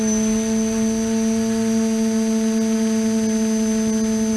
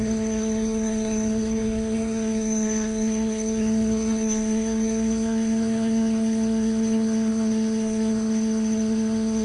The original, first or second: first